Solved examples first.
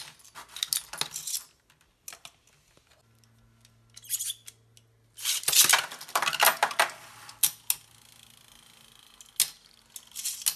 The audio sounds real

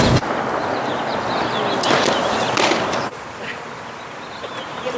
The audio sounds real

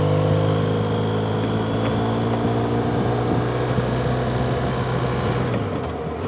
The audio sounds real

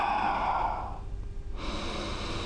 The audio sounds real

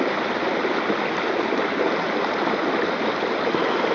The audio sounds real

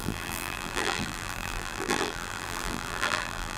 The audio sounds fake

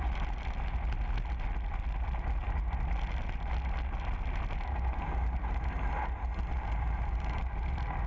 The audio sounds real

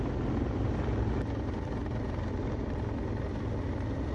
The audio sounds real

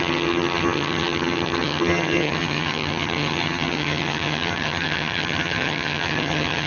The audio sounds fake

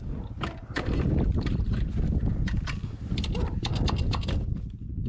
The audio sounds real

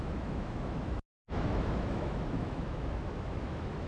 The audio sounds fake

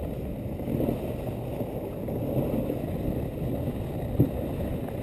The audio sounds real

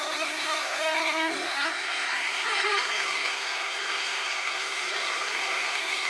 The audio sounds fake